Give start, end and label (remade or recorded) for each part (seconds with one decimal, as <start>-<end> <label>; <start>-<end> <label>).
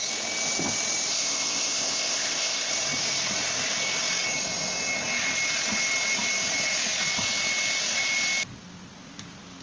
0.0-1.1 recorded; 1.1-2.7 remade; 2.7-9.6 recorded